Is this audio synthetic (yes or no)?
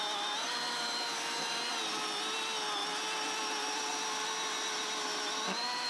no